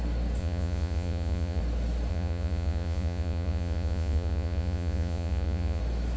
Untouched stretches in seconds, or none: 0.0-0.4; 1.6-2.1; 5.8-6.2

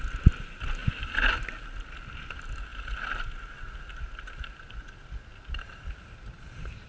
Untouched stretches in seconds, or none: 0.0-0.8; 1.5-6.9

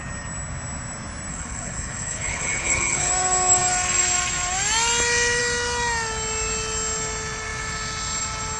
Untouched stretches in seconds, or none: 0.0-1.3; 3.1-8.6

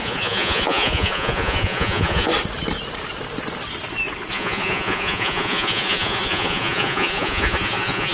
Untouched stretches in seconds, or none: 2.3-4.3

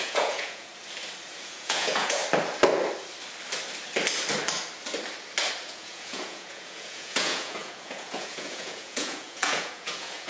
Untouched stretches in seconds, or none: 0.7-1.4; 2.2-5.7

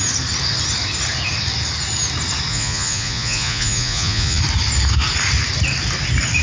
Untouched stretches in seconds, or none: 0.0-2.5; 4.4-6.4